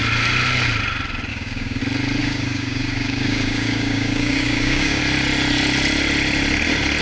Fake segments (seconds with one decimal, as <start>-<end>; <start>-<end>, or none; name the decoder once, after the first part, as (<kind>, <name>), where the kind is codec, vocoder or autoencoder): 1.3-1.8 (codec, DAC); 2.2-5.0